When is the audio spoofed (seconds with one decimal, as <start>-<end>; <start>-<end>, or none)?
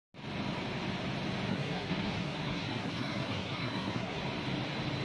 1.5-4.2